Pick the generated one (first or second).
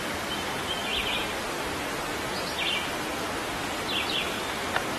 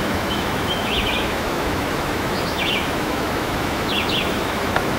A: second